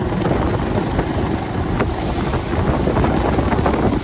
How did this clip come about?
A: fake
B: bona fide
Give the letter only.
B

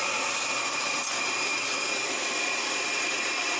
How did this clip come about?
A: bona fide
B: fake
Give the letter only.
A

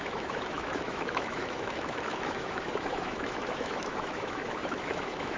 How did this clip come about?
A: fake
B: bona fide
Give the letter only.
A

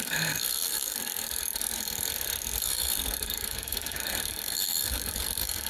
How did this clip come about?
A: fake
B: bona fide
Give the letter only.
A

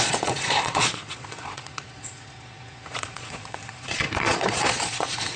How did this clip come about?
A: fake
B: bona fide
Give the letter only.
A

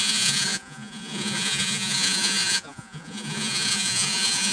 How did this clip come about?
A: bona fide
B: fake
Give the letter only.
B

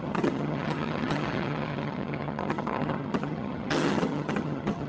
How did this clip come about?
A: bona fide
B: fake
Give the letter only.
B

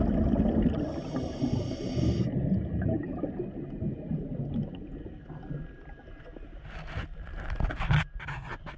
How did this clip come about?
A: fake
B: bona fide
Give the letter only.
B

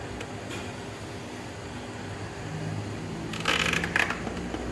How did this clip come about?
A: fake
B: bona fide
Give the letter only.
B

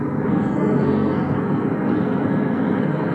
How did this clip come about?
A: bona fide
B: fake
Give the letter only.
B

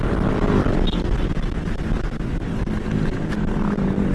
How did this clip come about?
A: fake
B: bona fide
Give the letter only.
B